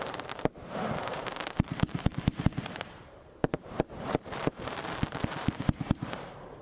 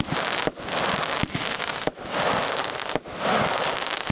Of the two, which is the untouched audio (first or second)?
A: second